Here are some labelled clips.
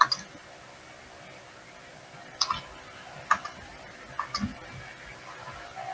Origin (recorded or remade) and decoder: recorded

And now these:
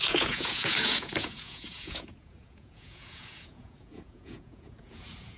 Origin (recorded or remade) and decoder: remade, vocoder, Vocos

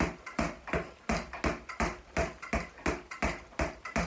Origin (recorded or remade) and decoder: recorded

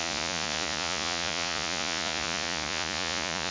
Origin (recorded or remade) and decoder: remade, vocoder, Vocos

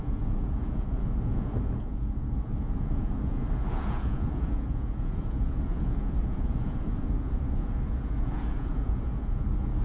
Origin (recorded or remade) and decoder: remade, vocoder, Vocos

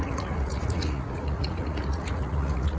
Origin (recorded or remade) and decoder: remade, vocoder, Vocos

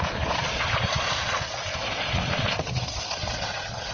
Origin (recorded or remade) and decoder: remade, vocoder, Vocos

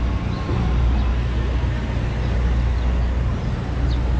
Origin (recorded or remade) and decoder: recorded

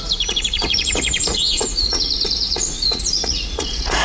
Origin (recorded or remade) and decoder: remade, vocoder, Vocos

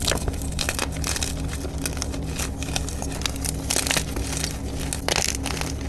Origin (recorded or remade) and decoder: recorded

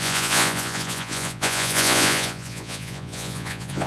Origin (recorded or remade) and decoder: remade, vocoder, Vocos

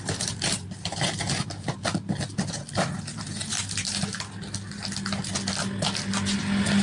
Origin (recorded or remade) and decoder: recorded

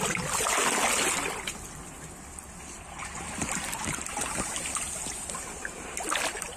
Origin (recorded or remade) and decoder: recorded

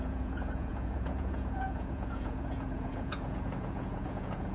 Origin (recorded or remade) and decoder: remade, vocoder, Vocos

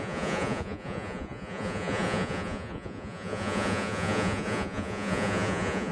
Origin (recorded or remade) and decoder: remade, vocoder, Vocos